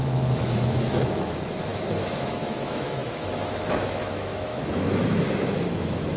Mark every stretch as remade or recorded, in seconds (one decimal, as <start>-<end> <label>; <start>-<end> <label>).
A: 0.0-6.2 remade